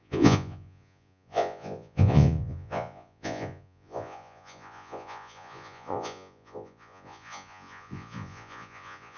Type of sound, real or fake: fake